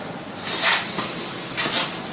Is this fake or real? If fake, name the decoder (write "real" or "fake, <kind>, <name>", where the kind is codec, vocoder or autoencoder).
real